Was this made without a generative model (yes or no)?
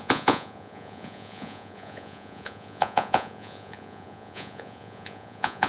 no